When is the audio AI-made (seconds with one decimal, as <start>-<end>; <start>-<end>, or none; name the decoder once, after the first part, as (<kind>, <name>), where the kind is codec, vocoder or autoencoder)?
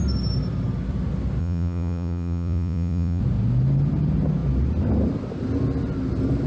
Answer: 1.4-3.2 (vocoder, Vocos)